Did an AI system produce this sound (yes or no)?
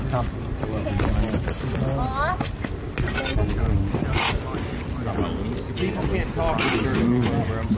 no